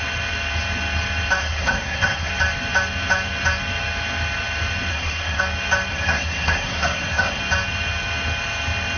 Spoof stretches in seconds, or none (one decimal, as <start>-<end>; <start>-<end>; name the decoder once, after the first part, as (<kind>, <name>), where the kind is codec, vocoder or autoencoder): 1.4-2.3 (codec, SNAC); 4.9-5.4; 5.9-7.4